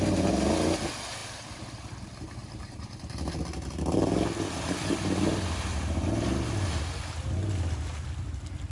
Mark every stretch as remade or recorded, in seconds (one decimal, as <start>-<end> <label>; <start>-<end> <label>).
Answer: 0.0-2.4 recorded; 2.4-3.4 remade; 3.4-5.7 recorded; 5.7-6.8 remade; 6.8-8.7 recorded